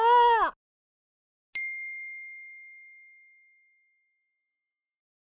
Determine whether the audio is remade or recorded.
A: recorded